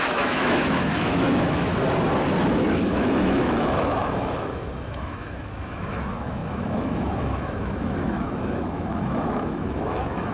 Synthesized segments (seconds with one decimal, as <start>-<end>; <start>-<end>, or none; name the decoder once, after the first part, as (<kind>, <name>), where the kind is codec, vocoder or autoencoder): 0.0-1.7 (autoencoder, DAC-VAE); 2.7-10.3